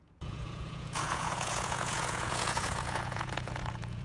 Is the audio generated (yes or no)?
yes